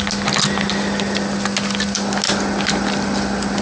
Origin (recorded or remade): recorded